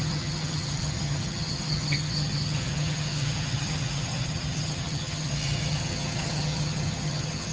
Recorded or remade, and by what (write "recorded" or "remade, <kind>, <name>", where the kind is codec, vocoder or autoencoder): remade, vocoder, HiFi-GAN